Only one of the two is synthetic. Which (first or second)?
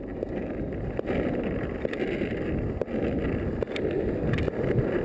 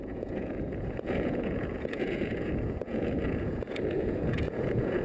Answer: second